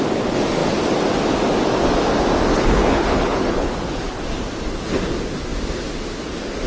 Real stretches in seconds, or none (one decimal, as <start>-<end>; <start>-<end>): 0.0-2.5; 4.2-6.7